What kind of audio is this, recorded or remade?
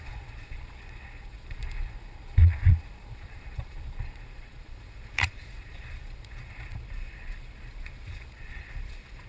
remade